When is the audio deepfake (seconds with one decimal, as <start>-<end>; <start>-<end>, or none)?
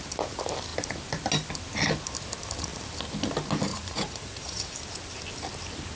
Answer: 3.7-4.6